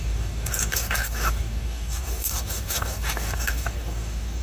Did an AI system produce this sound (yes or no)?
yes